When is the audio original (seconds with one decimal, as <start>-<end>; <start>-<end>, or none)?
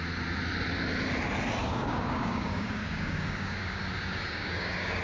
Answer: 0.0-1.7